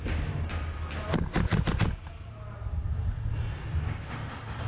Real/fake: real